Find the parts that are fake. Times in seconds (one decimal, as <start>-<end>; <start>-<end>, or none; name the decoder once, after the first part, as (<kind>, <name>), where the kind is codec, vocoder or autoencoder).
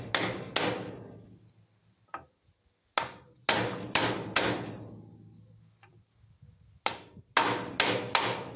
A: none